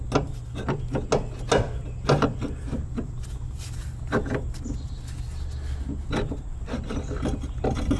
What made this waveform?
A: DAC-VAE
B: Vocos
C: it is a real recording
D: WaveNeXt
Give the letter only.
C